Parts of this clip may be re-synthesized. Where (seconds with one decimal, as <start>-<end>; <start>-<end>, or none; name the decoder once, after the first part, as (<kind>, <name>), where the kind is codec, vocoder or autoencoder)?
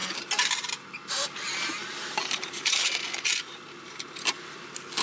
0.0-3.0 (vocoder, BigVGAN v2)